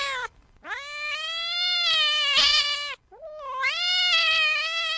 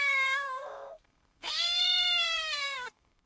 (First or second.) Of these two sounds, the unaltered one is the first